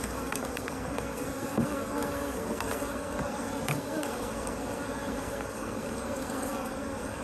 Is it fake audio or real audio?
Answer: fake